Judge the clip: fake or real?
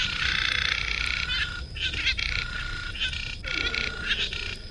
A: real